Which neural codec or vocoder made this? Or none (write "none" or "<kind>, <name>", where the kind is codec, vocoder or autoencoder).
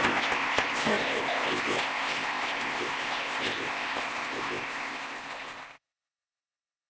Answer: codec, ZipCodec